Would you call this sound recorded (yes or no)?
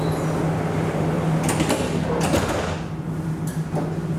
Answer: yes